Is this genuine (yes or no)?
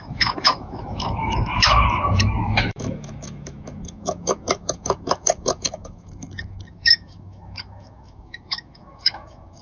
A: no